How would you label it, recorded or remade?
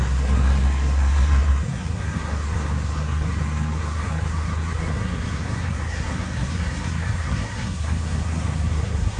remade